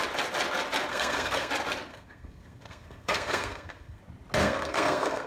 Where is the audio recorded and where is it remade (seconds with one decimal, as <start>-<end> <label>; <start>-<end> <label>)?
0.0-0.9 recorded; 0.9-1.5 remade; 1.5-1.9 recorded; 1.9-4.0 remade; 4.0-4.4 recorded; 4.4-5.3 remade